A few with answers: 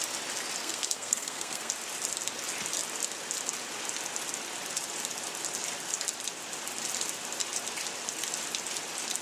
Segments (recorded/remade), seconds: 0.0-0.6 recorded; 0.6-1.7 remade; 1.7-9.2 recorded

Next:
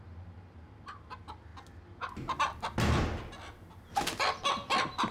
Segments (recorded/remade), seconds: 0.0-5.1 recorded